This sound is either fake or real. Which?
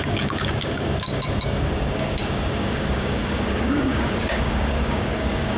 fake